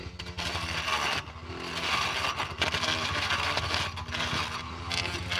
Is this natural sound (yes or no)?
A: yes